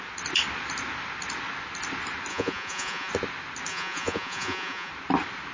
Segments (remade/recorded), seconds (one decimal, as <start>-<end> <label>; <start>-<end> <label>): 0.0-2.3 recorded; 2.3-3.1 remade; 3.1-3.7 recorded; 3.7-4.9 remade; 4.9-5.5 recorded